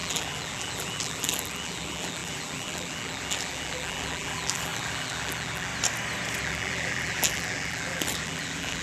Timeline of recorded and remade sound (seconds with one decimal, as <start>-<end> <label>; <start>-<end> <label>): 0.0-5.7 remade; 5.7-6.4 recorded; 6.4-8.8 remade